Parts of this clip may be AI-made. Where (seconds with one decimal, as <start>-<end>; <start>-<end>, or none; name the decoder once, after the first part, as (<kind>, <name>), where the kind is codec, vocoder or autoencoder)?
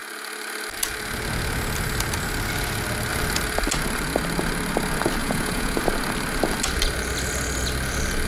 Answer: 5.2-5.8 (vocoder, Vocos)